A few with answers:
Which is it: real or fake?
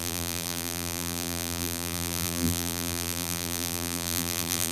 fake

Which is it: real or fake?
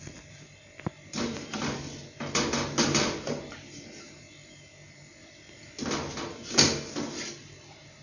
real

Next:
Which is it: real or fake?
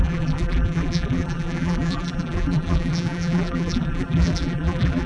fake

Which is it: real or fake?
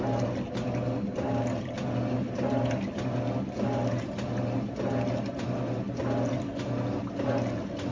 real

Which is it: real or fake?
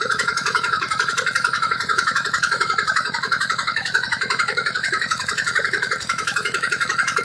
fake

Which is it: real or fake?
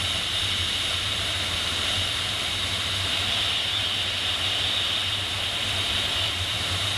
fake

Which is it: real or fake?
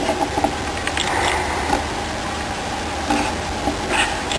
real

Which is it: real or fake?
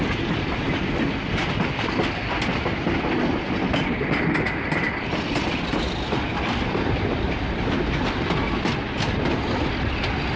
real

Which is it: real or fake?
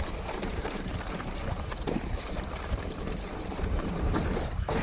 fake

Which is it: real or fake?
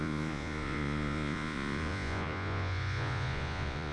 fake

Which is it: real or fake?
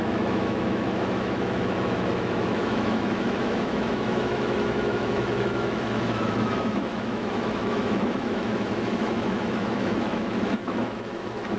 fake